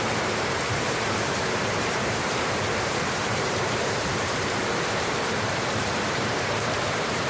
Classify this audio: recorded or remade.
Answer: remade